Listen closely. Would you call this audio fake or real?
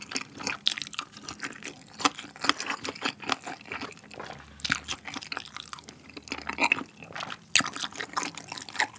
real